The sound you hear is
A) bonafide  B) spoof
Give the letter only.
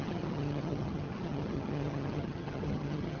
B